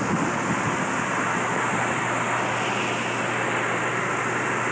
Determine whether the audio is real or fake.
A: real